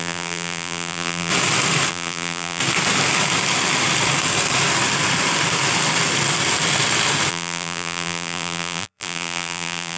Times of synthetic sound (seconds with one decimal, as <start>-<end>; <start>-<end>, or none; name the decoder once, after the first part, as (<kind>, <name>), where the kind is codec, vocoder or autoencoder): 0.0-1.3 (vocoder, BigVGAN v2); 1.9-2.6; 7.3-10.0